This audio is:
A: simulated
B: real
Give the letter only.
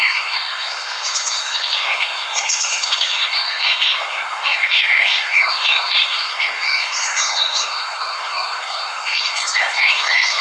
A